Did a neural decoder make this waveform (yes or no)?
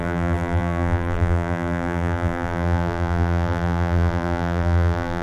yes